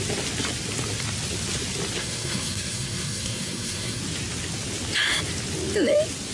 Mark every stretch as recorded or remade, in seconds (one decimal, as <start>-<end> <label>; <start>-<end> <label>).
0.0-2.0 recorded; 2.0-4.0 remade; 4.0-6.3 recorded